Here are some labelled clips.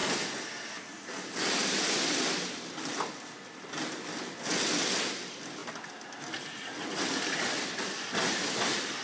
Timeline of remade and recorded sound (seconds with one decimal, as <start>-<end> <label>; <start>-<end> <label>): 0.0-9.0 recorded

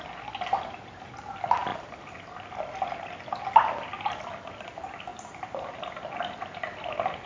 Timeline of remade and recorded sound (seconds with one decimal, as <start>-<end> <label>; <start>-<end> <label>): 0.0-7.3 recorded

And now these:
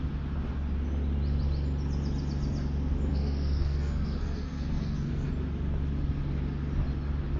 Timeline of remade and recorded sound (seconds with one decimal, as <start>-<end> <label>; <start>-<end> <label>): 0.0-3.1 recorded; 3.1-5.3 remade; 5.3-7.4 recorded

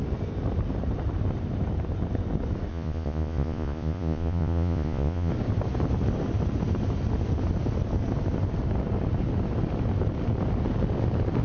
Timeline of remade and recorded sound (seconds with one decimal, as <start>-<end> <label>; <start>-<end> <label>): 0.0-2.7 recorded; 2.7-5.3 remade; 5.3-11.4 recorded

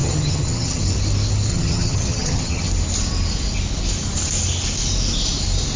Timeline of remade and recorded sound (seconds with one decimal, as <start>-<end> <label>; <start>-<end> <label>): 0.0-0.8 remade; 0.8-1.5 recorded; 1.5-2.7 remade; 2.7-5.8 recorded

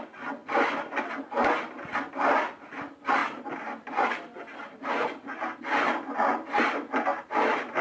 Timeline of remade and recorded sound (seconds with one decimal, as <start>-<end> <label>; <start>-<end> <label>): 0.0-0.4 recorded; 0.4-2.3 remade; 2.3-3.2 recorded; 3.2-5.6 remade; 5.6-7.8 recorded

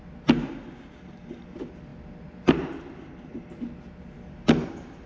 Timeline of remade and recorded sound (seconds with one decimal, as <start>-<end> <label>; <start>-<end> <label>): 0.0-5.1 recorded